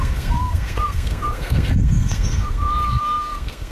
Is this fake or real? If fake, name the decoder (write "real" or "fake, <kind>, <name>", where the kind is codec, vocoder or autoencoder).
fake, codec, SNAC